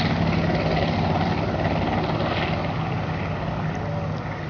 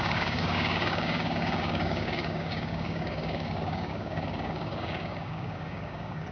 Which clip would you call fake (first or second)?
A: second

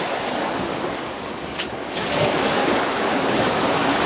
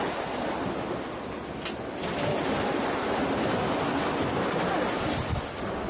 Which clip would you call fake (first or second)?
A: first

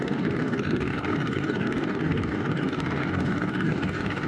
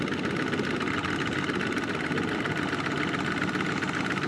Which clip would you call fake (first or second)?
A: first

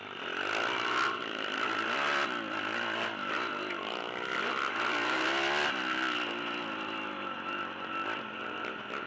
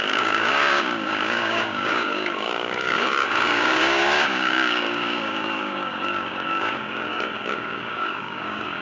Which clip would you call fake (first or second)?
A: second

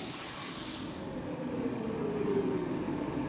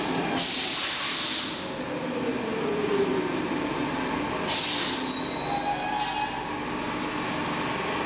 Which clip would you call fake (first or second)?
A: first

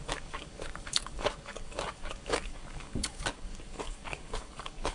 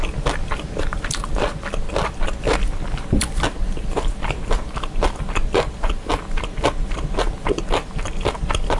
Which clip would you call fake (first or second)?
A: first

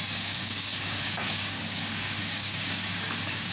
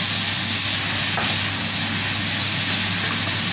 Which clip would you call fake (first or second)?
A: first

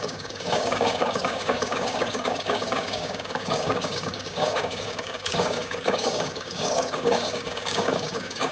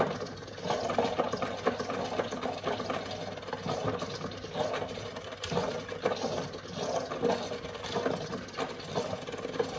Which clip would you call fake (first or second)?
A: first